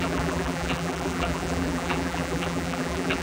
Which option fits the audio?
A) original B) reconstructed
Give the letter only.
B